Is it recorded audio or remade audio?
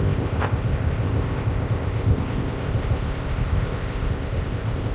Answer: remade